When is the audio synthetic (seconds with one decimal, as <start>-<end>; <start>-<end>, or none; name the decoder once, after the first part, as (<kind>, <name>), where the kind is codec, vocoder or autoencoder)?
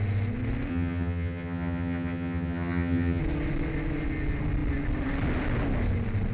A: 0.7-3.2 (vocoder, HiFi-GAN)